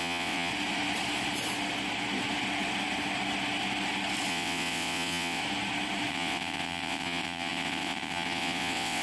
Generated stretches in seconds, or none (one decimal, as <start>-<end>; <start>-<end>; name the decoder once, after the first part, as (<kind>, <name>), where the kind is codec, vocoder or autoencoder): 0.0-0.5 (vocoder, WaveNeXt); 4.3-5.4; 6.1-9.0